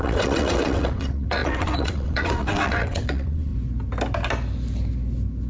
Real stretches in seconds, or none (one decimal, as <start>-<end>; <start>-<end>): 3.5-5.5

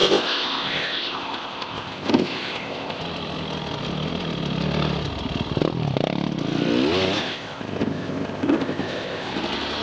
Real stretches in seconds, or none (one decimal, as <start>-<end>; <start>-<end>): 3.0-7.2; 9.3-9.8